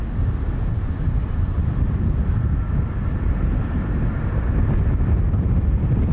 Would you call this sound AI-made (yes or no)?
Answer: no